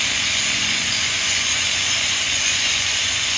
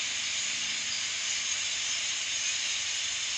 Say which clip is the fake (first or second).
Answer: first